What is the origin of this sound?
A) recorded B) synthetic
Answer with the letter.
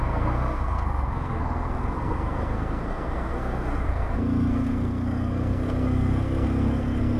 B